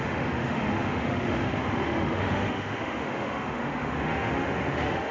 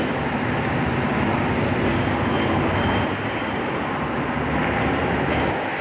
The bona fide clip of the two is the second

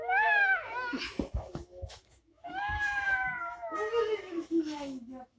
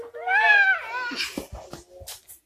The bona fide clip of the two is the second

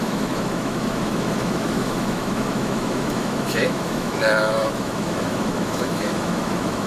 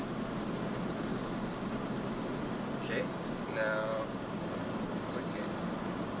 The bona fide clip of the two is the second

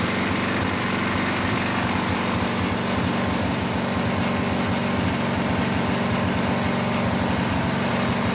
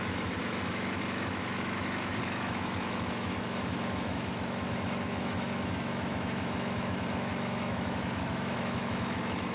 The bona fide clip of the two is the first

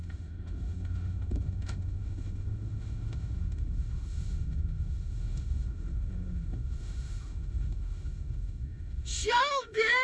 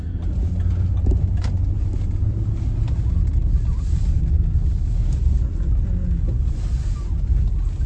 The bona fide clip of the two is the second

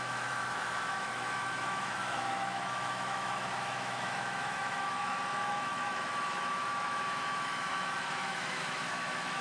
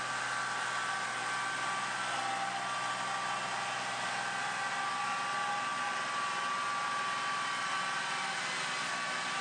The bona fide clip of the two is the second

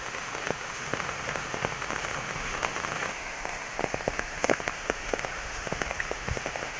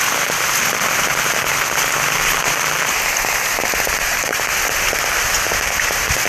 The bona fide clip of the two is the second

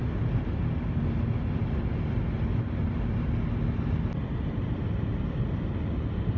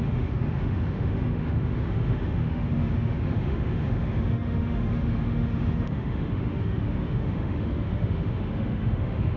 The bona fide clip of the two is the first